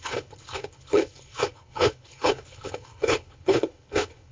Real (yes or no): no